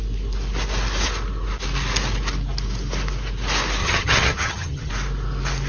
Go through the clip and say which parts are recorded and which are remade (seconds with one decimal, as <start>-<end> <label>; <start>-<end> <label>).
0.0-3.8 recorded; 3.8-4.9 remade; 4.9-5.7 recorded